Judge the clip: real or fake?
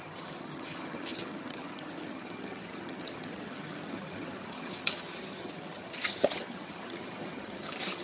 fake